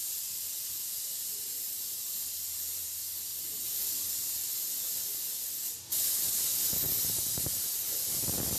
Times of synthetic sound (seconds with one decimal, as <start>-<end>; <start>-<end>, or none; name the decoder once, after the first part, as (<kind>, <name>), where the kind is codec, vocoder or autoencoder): none